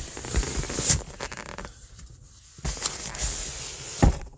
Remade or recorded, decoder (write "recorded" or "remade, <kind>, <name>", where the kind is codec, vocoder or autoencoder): recorded